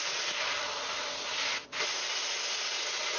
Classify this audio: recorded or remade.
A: recorded